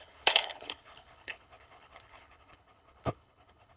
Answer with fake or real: fake